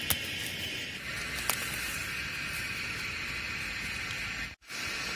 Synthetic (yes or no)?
no